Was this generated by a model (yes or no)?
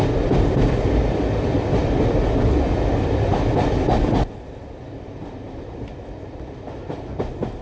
no